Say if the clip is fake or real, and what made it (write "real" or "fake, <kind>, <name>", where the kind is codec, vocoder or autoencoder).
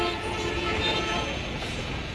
fake, vocoder, Vocos